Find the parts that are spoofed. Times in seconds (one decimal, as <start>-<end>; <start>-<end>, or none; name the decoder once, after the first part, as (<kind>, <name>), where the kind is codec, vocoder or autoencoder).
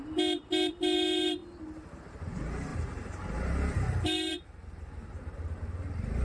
none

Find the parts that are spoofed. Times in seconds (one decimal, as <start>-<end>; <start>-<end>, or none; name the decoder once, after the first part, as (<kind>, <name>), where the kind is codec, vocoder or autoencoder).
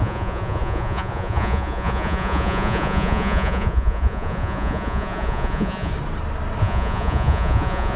0.0-5.9 (vocoder, Vocos); 6.6-8.0